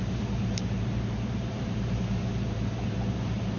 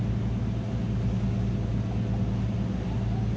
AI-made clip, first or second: first